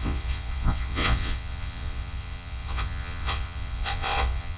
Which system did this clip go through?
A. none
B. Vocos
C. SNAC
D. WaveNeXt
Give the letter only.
D